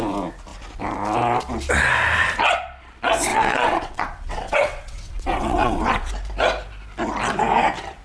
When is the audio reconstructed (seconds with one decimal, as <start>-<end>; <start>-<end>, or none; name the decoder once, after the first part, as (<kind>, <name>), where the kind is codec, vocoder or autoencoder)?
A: 3.3-6.1 (vocoder, WaveNeXt)